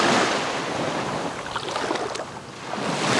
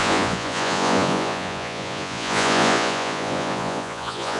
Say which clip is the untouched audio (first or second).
first